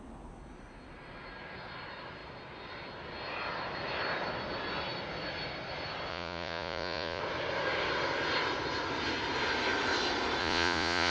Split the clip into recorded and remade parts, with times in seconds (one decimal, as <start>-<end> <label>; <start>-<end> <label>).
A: 0.0-6.1 recorded; 6.1-7.2 remade; 7.2-10.4 recorded; 10.4-11.1 remade